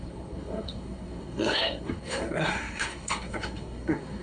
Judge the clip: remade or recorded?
remade